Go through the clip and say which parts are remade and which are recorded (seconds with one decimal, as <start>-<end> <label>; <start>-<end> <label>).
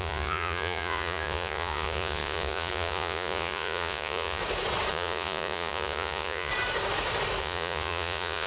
0.0-4.4 remade; 4.4-4.9 recorded; 4.9-6.5 remade; 6.5-7.4 recorded; 7.4-8.5 remade